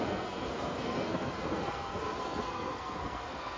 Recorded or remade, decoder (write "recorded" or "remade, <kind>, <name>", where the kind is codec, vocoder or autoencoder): remade, codec, SNAC